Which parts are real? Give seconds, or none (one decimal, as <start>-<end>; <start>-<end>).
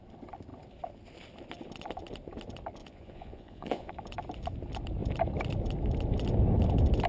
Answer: 0.0-2.8; 3.9-7.1